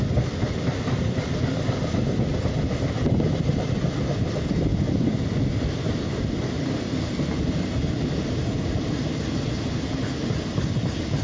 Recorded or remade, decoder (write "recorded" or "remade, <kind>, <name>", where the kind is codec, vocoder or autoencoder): recorded